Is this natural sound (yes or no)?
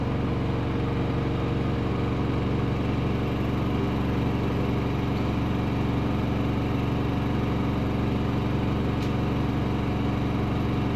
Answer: yes